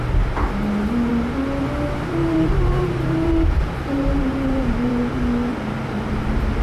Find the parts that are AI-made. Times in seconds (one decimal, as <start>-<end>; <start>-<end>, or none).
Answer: 2.2-5.1; 5.5-6.1